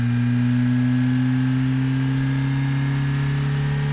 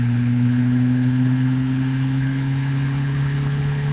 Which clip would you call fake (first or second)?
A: second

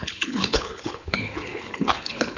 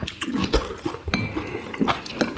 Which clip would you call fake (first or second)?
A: first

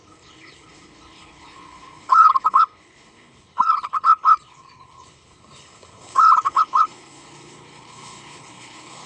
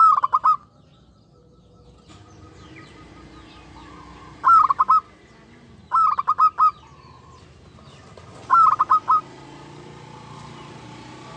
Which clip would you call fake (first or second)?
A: first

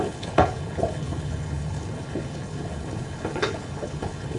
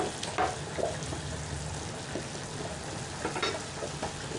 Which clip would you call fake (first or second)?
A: first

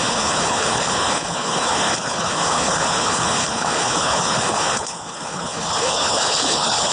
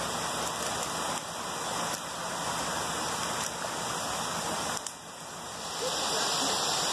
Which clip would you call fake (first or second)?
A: first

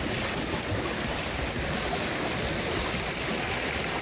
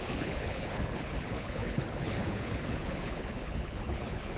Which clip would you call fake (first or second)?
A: second